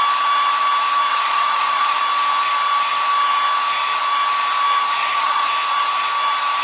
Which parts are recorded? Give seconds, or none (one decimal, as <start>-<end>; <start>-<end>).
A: 0.0-1.1; 2.0-5.0; 5.5-6.6